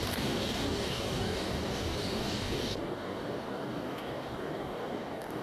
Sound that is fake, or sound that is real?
fake